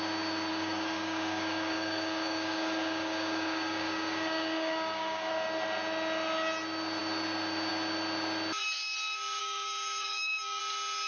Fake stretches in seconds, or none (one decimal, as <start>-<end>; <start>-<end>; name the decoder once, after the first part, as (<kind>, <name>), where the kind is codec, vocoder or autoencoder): 0.5-5.3 (codec, DAC); 9.4-10.6

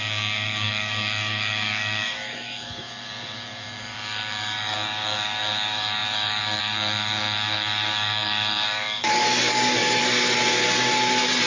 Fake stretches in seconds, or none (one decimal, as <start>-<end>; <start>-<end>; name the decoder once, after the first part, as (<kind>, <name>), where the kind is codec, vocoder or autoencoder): 0.0-10.0 (codec, DAC)

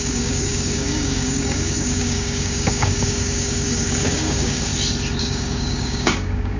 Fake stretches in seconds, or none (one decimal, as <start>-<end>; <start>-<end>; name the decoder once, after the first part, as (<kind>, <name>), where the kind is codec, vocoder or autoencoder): 0.0-4.7 (codec, DAC); 5.2-6.6

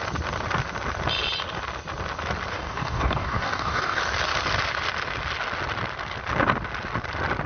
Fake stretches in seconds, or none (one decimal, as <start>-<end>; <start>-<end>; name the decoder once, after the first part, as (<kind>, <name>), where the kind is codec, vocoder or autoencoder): 2.5-4.0 (codec, DAC)

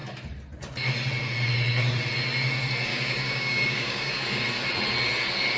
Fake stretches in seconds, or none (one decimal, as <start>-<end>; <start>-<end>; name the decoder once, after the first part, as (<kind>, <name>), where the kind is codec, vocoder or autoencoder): 2.9-4.4 (codec, DAC)

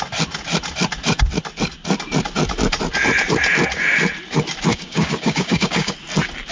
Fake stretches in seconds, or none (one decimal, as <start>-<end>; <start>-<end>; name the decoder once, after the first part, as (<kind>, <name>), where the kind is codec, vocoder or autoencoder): 4.7-5.9 (codec, DAC)

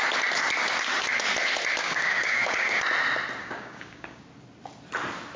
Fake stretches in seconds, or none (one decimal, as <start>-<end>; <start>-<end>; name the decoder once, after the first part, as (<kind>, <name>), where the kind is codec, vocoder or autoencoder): 1.8-2.8 (codec, DAC); 3.4-4.2